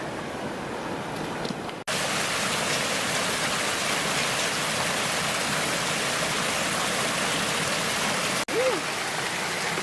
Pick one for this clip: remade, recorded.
recorded